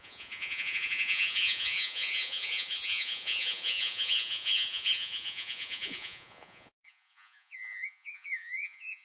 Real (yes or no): no